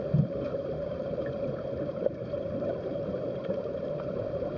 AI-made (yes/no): yes